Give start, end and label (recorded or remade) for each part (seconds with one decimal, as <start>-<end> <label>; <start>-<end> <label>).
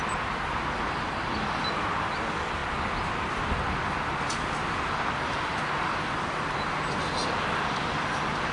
0.0-8.5 recorded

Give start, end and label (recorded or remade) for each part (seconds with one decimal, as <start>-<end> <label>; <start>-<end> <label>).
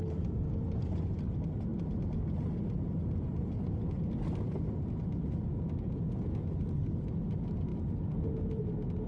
0.0-9.1 recorded